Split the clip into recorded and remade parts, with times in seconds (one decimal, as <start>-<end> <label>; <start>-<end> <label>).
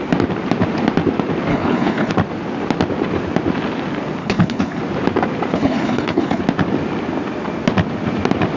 0.0-1.5 recorded; 1.5-2.1 remade; 2.1-4.2 recorded; 4.2-4.8 remade; 4.8-5.5 recorded; 5.5-6.4 remade; 6.4-8.6 recorded